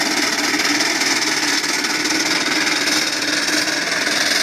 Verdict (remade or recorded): recorded